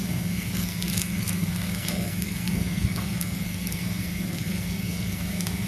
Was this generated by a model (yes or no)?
yes